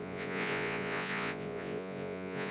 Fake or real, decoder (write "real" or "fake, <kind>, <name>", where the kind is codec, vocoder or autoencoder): fake, vocoder, Vocos